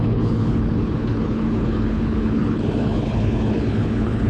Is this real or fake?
fake